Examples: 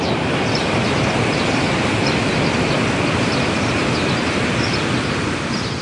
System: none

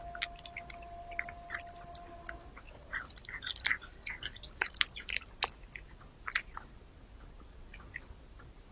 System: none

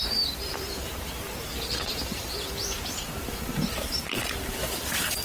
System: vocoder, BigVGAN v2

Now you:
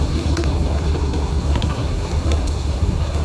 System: codec, SNAC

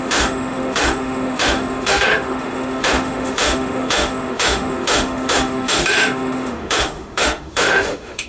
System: autoencoder, DAC-VAE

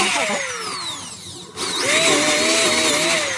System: none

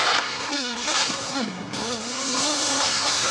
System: codec, SNAC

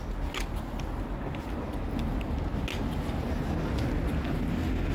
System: none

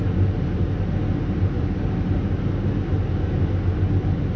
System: none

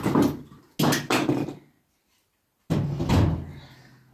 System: none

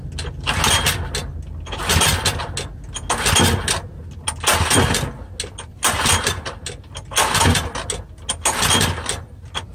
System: none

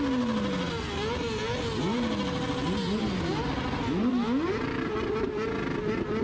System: none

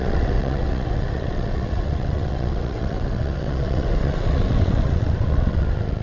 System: vocoder, WaveNeXt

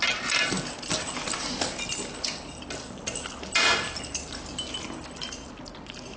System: none